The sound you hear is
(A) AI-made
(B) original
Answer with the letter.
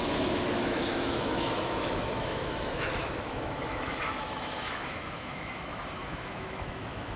A